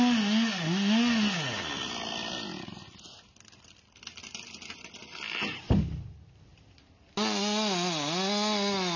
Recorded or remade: recorded